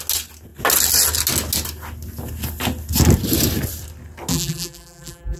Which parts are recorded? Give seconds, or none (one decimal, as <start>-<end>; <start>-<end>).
0.0-4.3